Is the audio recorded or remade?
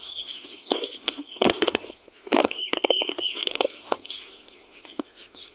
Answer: remade